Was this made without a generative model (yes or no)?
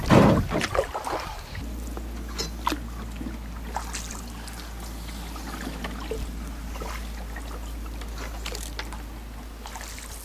yes